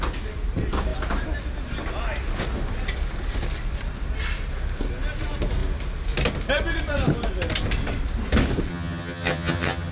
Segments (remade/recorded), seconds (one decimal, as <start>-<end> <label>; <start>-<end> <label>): 0.0-8.7 recorded; 8.7-9.9 remade